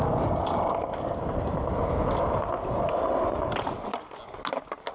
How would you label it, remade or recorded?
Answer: recorded